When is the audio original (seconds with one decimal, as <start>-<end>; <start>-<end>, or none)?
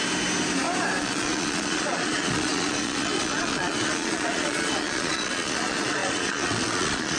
0.0-1.0